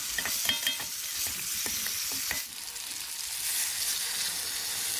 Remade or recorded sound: recorded